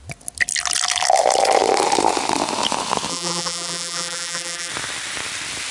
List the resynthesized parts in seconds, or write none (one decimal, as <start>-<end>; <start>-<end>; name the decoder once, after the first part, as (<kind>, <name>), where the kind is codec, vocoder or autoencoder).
3.1-4.7 (vocoder, BigVGAN v2)

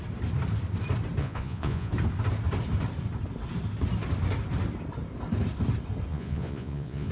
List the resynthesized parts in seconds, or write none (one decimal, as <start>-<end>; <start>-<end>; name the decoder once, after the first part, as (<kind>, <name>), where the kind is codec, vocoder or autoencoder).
1.2-1.9 (vocoder, Vocos); 6.1-7.1

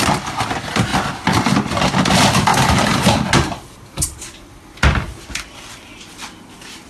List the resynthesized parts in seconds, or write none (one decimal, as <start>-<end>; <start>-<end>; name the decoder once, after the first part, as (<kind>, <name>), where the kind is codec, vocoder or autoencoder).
none

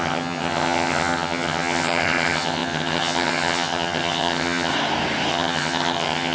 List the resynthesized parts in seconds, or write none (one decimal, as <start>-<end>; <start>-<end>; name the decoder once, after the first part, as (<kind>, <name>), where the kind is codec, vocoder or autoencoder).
0.0-4.7 (vocoder, HiFi-GAN); 5.3-6.3